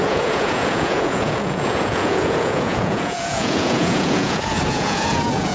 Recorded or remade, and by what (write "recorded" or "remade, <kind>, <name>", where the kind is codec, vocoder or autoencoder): remade, vocoder, Vocos